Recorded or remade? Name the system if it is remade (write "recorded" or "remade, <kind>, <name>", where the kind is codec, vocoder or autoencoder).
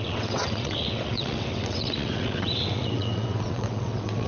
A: remade, vocoder, WaveNeXt